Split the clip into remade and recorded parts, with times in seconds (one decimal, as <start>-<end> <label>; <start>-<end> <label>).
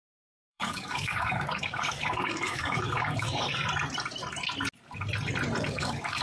0.0-3.5 remade; 3.5-5.6 recorded; 5.6-6.2 remade